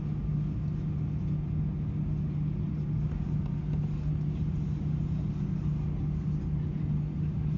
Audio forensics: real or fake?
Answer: real